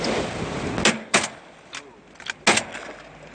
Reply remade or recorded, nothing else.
recorded